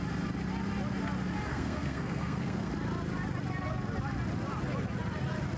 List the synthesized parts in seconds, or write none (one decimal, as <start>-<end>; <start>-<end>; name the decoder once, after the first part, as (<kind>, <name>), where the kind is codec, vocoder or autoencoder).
1.5-2.7 (codec, SNAC)